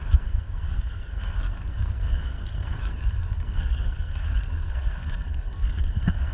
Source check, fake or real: fake